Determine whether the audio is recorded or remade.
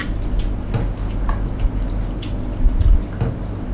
recorded